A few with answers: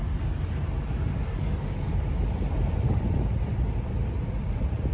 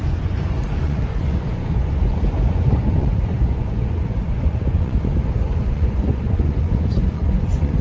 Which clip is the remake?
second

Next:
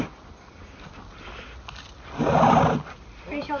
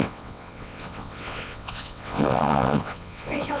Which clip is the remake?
second